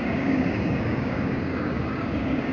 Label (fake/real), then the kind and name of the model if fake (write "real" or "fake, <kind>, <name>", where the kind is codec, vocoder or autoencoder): fake, codec, DAC